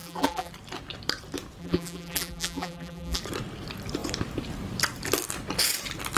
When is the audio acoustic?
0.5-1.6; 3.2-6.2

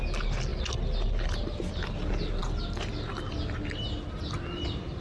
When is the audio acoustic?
0.0-5.0

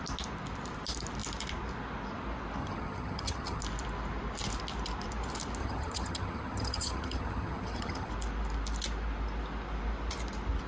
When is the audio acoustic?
0.0-2.6; 3.6-5.6; 8.1-10.7

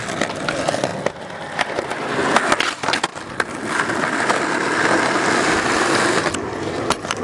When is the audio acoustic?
0.0-7.2

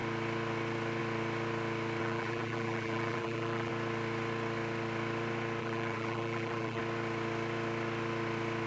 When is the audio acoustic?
0.0-2.0; 3.7-5.6; 6.8-8.7

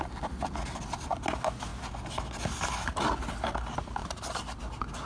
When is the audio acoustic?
0.0-4.0; 4.6-5.1

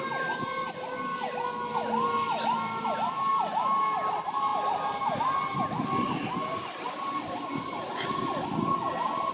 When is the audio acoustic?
0.0-9.3

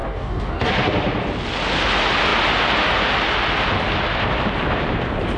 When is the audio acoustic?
0.7-5.4